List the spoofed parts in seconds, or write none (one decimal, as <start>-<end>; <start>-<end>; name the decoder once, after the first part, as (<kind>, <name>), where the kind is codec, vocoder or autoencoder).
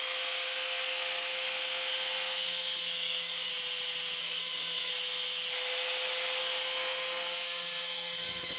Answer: 0.0-3.5 (codec, SNAC); 4.2-4.9; 6.4-8.6